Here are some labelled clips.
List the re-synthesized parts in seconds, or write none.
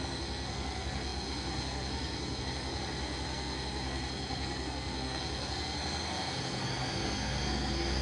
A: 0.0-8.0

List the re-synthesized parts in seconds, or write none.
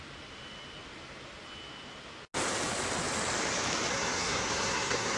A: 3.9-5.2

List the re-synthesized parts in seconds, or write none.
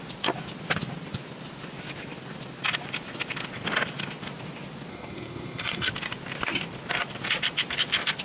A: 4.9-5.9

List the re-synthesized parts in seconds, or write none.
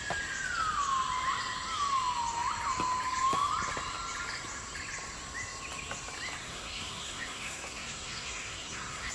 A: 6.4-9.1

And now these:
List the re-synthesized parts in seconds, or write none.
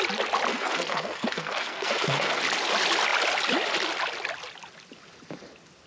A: 0.5-2.4